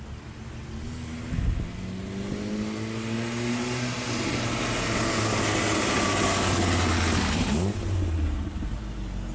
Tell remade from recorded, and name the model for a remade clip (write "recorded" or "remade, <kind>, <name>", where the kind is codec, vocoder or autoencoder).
recorded